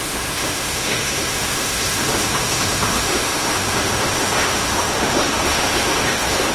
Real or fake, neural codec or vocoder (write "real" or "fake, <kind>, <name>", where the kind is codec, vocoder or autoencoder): fake, autoencoder, DAC-VAE